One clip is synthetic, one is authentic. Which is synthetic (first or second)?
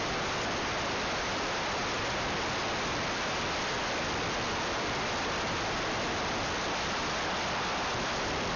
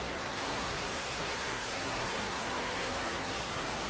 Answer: second